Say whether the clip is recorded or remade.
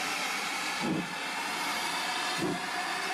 recorded